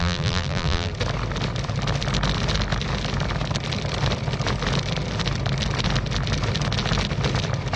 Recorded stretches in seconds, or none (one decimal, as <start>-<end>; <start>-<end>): 0.9-7.8